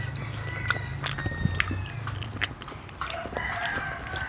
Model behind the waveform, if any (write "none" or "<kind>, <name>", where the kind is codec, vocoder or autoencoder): none